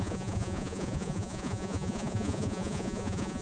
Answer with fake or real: fake